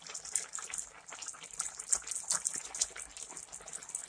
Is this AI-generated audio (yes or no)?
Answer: no